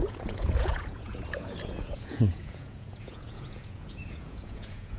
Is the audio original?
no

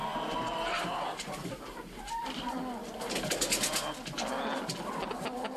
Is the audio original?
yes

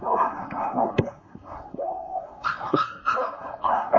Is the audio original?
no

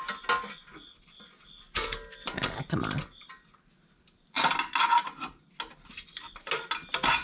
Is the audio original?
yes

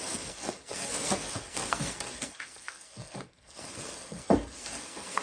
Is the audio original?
no